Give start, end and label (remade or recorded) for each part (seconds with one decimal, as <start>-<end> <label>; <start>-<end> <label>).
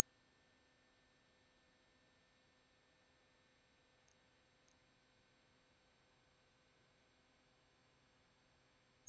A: 0.0-9.1 recorded